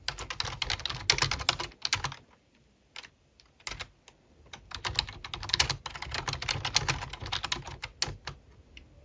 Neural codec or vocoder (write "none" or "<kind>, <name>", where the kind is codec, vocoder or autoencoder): none